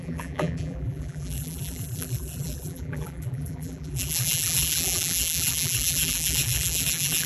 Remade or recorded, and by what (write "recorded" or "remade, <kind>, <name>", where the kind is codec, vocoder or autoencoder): remade, vocoder, BigVGAN v2